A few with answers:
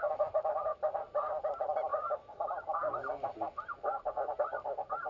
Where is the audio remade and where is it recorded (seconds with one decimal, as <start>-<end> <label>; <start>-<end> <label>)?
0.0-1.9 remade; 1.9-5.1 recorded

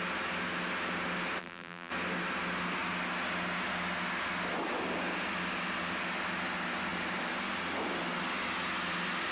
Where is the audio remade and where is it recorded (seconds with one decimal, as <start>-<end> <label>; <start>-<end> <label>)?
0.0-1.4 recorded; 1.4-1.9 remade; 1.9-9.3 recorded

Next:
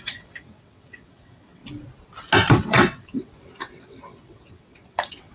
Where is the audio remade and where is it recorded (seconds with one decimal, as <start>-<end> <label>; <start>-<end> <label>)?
0.0-1.6 remade; 1.6-2.5 recorded; 2.5-5.3 remade